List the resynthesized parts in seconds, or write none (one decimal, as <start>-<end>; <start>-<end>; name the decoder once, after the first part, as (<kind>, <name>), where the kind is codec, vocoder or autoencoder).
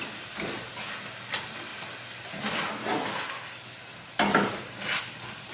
none